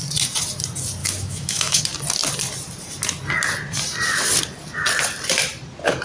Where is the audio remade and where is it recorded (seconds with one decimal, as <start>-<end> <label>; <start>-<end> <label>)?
0.0-1.0 recorded; 1.0-1.8 remade; 1.8-6.0 recorded